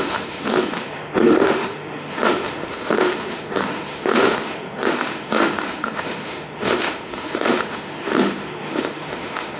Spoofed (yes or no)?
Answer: yes